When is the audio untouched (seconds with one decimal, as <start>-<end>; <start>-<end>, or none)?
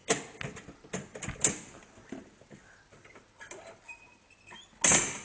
0.0-5.2